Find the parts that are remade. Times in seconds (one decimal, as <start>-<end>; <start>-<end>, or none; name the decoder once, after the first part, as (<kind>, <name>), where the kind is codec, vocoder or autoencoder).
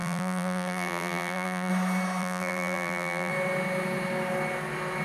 0.0-1.7 (vocoder, BigVGAN v2); 2.2-3.3